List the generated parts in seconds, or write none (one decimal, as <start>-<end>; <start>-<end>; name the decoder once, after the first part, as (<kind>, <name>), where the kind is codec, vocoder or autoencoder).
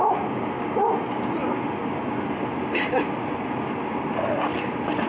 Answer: none